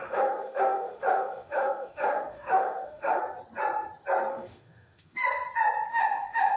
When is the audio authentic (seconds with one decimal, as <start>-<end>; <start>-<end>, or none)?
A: 3.2-4.3; 5.2-5.9